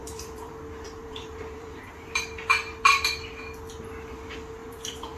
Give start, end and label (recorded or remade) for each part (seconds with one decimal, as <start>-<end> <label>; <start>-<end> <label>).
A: 0.0-0.5 remade; 0.5-1.0 recorded; 1.0-2.2 remade; 2.2-4.6 recorded; 4.6-5.2 remade